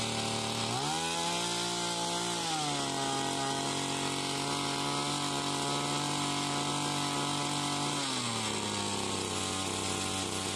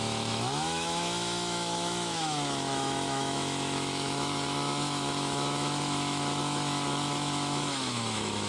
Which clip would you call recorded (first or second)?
first